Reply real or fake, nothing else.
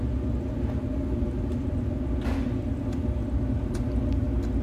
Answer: real